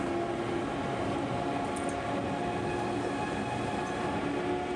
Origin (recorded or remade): recorded